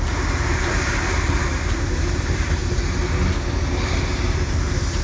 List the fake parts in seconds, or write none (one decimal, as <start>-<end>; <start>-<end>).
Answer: 0.0-2.6; 4.0-5.0